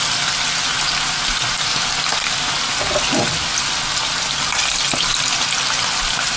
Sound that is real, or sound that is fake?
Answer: real